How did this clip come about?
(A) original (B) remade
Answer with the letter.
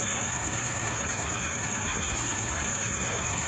B